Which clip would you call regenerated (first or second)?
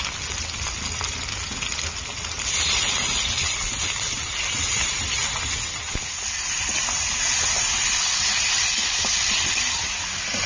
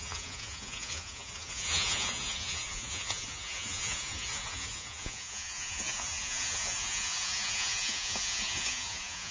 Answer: second